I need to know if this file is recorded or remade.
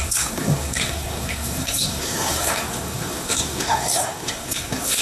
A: remade